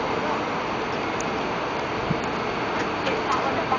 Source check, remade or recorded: recorded